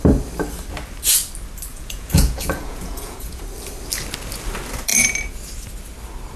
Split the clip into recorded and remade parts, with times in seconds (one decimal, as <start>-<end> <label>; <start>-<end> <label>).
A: 0.0-1.7 recorded; 1.7-3.4 remade; 3.4-6.4 recorded